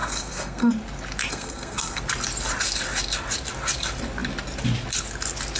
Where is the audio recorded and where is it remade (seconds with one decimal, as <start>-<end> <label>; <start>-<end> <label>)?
0.0-0.7 remade; 0.7-1.3 recorded; 1.3-2.0 remade; 2.0-5.6 recorded